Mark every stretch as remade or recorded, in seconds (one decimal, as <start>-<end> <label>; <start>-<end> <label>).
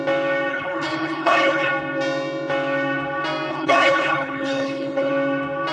0.0-0.5 recorded; 0.5-1.7 remade; 1.7-3.5 recorded; 3.5-5.1 remade; 5.1-5.7 recorded